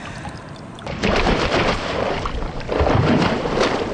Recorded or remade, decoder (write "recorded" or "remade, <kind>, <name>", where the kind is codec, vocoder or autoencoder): recorded